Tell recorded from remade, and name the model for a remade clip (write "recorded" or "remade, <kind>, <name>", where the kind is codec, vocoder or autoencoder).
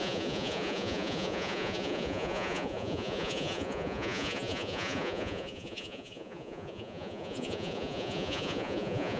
remade, vocoder, Vocos